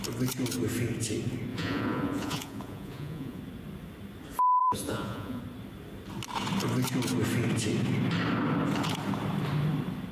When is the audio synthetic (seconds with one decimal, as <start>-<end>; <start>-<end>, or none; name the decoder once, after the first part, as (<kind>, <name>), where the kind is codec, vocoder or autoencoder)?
1.5-3.4 (vocoder, Vocos); 4.6-5.4